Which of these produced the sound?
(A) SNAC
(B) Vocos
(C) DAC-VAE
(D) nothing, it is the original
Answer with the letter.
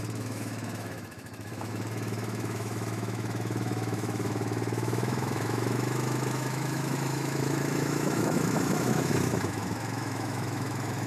C